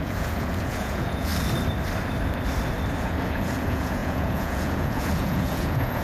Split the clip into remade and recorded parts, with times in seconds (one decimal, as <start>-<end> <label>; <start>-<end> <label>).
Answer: 0.0-1.3 remade; 1.3-3.0 recorded; 3.0-6.0 remade